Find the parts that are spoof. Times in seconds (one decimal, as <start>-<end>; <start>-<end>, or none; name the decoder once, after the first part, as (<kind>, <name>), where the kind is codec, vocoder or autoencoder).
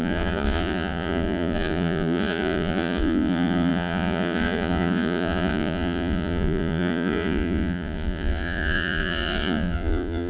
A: 0.0-10.3 (vocoder, Vocos)